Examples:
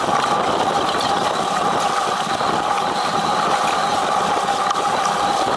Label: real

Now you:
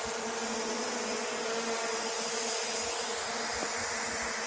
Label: real